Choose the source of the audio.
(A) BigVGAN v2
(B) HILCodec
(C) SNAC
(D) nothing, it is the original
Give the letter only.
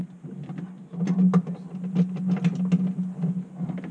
D